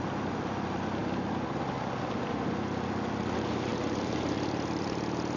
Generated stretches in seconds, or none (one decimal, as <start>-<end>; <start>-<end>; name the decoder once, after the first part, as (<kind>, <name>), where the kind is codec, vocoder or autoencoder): none